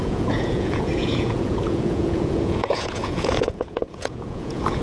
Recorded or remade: remade